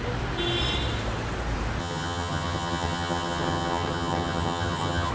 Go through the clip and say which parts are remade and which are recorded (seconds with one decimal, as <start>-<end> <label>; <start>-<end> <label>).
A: 0.0-1.8 recorded; 1.8-5.1 remade